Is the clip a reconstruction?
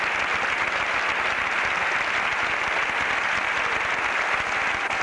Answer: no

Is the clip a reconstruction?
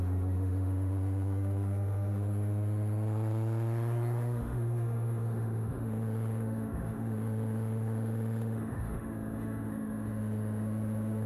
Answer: yes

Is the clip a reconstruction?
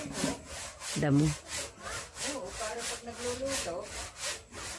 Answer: no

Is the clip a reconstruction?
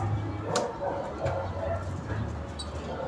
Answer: no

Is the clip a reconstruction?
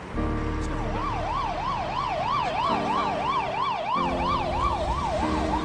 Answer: no